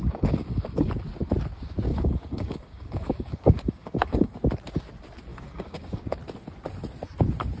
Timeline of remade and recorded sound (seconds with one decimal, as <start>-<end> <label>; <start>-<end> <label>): 0.0-0.9 remade; 0.9-1.9 recorded; 1.9-4.3 remade; 4.3-5.3 recorded; 5.3-6.2 remade; 6.2-7.6 recorded